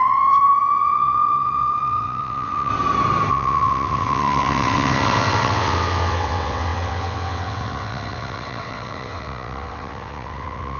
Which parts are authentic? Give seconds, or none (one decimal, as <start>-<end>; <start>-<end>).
2.7-3.3